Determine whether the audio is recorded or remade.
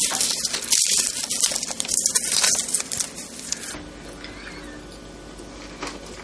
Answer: recorded